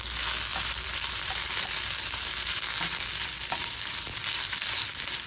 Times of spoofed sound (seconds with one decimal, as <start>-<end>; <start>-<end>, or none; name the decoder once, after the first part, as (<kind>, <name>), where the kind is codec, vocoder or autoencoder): 0.5-1.3 (vocoder, BigVGAN v2); 3.1-5.3